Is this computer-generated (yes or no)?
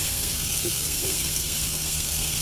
yes